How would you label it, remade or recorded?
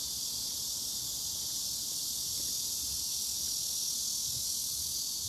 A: recorded